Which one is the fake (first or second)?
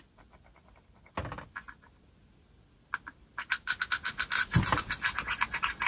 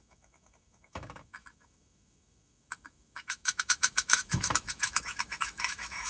second